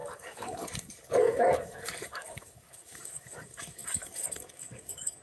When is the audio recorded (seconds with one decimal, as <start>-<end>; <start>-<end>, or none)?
none